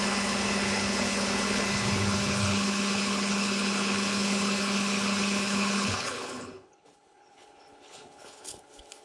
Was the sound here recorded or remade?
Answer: remade